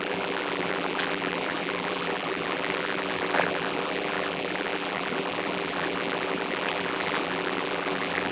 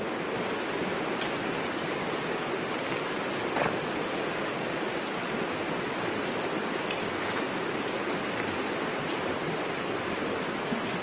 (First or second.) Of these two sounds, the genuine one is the second